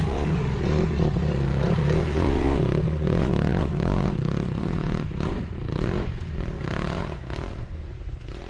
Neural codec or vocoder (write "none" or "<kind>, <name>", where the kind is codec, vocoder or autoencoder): vocoder, Vocos